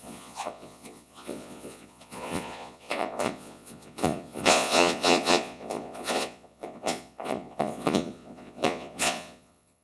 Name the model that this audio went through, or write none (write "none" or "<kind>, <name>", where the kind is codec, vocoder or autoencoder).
vocoder, Vocos